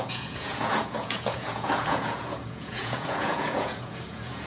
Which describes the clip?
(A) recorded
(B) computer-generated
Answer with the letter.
B